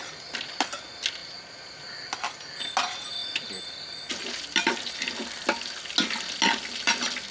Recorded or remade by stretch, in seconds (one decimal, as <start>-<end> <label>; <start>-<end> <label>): 0.0-7.3 recorded